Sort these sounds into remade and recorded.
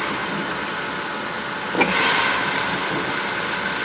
recorded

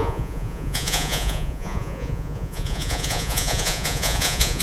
remade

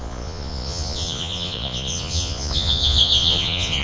remade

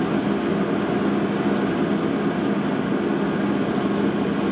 recorded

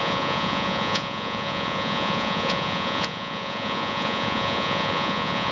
remade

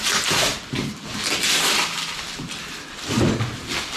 recorded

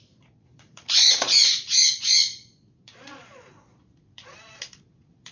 remade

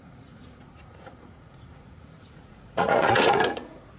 remade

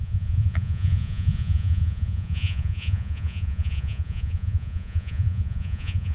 remade